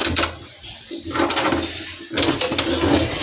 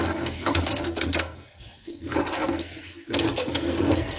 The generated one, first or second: second